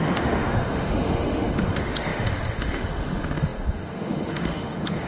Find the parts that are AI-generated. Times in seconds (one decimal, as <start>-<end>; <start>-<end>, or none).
0.0-5.1